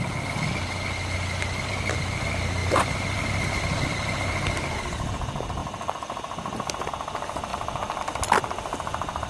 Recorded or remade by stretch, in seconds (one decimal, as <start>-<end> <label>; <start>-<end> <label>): 0.0-9.3 recorded